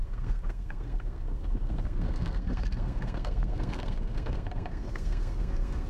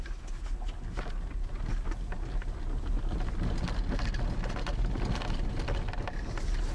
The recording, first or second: second